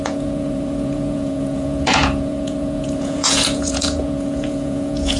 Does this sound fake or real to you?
fake